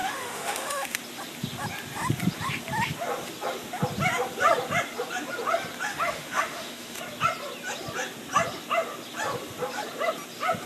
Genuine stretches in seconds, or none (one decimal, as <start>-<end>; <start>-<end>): 1.0-5.9; 7.0-10.7